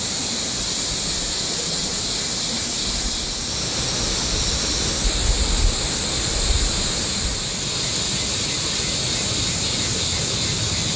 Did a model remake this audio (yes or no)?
no